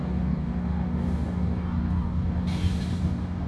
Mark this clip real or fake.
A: fake